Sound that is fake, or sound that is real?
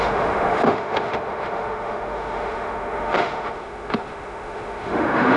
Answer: fake